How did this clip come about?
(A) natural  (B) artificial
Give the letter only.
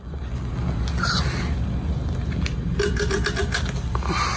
A